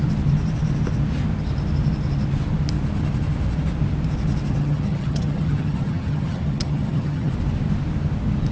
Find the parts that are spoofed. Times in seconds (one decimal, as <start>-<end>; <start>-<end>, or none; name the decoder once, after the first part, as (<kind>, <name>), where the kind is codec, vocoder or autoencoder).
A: 4.5-7.3 (vocoder, HiFi-GAN)